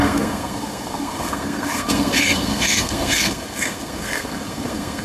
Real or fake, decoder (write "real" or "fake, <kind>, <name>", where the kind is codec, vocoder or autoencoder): fake, codec, SNAC